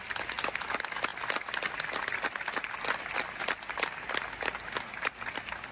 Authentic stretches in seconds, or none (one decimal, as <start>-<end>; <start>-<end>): 0.0-5.7